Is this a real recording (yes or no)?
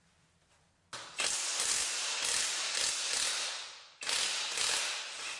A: yes